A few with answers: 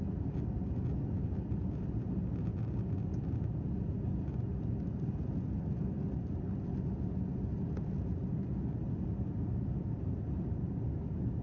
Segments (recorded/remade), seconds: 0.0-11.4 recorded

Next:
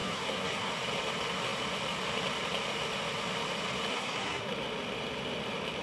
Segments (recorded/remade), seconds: 0.0-0.7 remade; 0.7-3.9 recorded; 3.9-4.5 remade; 4.5-5.8 recorded

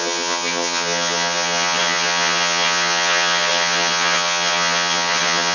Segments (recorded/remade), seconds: 0.0-5.5 remade

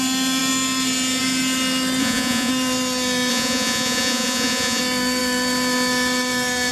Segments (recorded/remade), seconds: 0.0-2.0 recorded; 2.0-2.5 remade; 2.5-3.3 recorded; 3.3-4.8 remade; 4.8-6.7 recorded

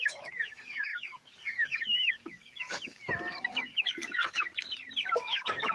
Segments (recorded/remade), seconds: 0.0-3.0 remade; 3.0-3.5 recorded; 3.5-4.5 remade; 4.5-5.2 recorded; 5.2-5.7 remade

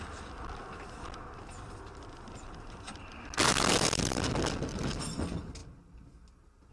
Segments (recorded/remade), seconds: 0.0-6.7 recorded

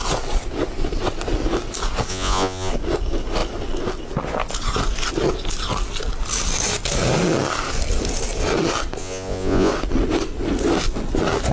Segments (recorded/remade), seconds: 0.0-2.1 recorded; 2.1-2.7 remade; 2.7-9.0 recorded; 9.0-9.7 remade; 9.7-11.5 recorded

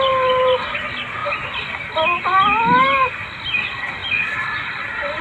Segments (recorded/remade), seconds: 0.0-1.2 remade; 1.2-3.1 recorded; 3.1-5.2 remade